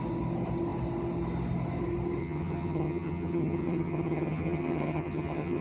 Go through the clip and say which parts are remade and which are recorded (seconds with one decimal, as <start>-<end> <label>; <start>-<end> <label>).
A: 0.0-2.2 recorded; 2.2-5.6 remade